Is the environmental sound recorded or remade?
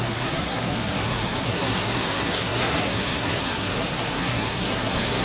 remade